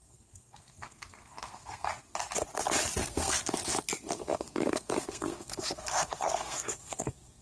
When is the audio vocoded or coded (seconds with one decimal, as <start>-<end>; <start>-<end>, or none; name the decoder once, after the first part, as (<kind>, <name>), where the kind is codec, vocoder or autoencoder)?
0.0-1.9 (codec, SNAC); 3.0-3.4; 4.2-7.4